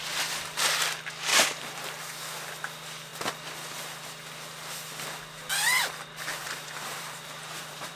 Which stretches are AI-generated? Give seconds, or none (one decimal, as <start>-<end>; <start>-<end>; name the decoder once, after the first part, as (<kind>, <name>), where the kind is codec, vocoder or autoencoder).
1.3-2.0 (vocoder, BigVGAN v2); 6.4-8.0